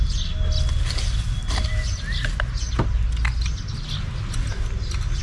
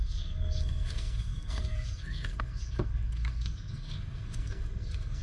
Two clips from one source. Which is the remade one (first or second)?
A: second